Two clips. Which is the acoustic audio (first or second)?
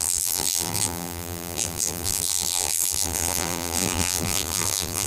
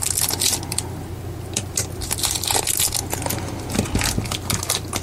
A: second